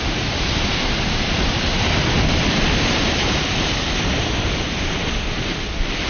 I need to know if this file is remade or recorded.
recorded